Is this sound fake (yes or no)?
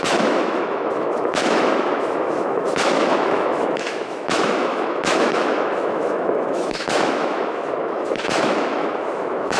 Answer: yes